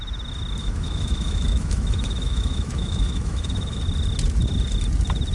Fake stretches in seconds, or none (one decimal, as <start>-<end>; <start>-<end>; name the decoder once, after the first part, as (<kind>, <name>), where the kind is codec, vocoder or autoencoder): 0.6-3.8 (autoencoder, DAC-VAE)